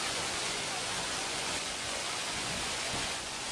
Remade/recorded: remade